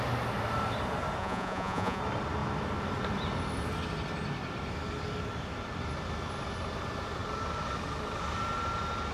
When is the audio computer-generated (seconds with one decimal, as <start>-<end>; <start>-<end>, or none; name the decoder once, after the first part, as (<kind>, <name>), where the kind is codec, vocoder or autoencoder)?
1.2-2.0 (vocoder, Vocos)